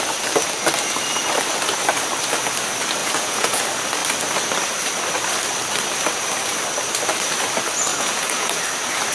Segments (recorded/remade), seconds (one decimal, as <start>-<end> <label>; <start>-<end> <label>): 0.0-3.0 recorded; 3.0-3.6 remade; 3.6-7.9 recorded; 7.9-8.6 remade; 8.6-9.1 recorded